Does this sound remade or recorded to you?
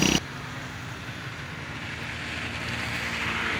recorded